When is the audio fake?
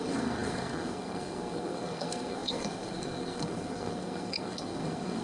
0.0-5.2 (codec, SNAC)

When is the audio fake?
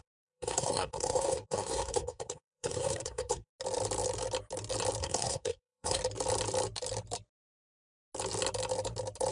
0.0-3.5 (codec, SNAC); 5.0-6.0